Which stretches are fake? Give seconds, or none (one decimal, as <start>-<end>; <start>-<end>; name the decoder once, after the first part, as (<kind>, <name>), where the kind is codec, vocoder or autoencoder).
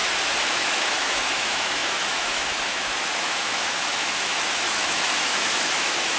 0.5-6.2 (autoencoder, DAC-VAE)